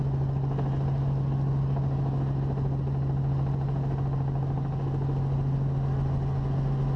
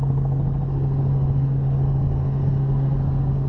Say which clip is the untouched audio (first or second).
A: first